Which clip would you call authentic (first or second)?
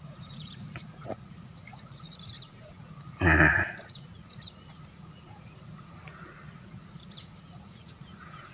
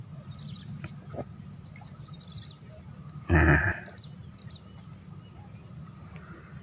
second